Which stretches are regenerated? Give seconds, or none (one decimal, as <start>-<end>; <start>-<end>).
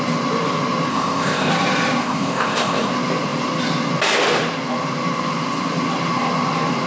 0.9-1.5; 2.0-2.9